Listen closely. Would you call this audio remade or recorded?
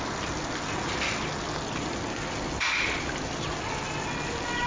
recorded